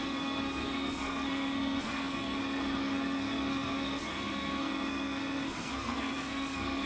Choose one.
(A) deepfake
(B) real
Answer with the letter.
A